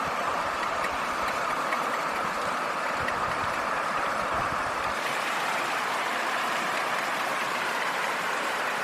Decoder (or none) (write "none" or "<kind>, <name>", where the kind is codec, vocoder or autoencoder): vocoder, BigVGAN v2